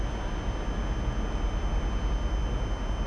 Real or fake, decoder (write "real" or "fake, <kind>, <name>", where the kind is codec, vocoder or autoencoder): real